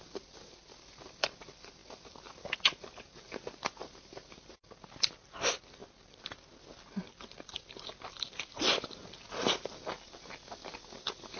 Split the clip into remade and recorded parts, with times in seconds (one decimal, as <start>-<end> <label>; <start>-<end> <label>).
0.0-11.4 recorded